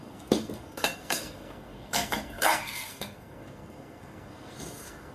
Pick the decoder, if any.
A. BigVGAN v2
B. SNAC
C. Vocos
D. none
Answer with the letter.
B